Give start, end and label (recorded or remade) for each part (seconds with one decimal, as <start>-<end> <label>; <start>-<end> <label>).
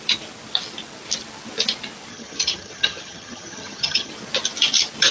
0.0-2.1 recorded; 2.1-4.1 remade; 4.1-5.1 recorded